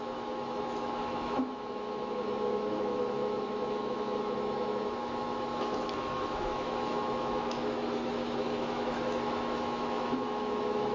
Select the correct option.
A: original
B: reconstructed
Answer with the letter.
B